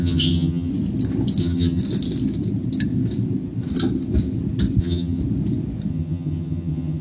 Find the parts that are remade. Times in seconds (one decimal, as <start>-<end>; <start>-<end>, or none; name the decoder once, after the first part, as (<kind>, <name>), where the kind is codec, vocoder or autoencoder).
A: 0.0-0.7 (vocoder, HiFi-GAN); 1.4-1.8; 4.8-5.2; 5.9-7.0

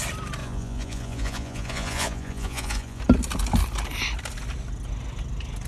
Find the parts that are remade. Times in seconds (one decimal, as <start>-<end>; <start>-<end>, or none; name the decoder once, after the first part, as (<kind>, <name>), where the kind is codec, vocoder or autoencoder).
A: 0.4-3.0 (vocoder, Vocos)